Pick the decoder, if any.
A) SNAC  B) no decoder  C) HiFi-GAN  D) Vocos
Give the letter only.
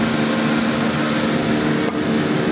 B